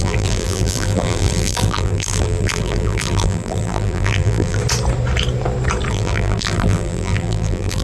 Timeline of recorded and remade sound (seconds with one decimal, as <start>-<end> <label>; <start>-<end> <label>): 0.0-4.6 remade; 4.6-5.9 recorded; 5.9-7.8 remade